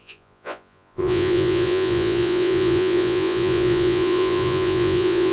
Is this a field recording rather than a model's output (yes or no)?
no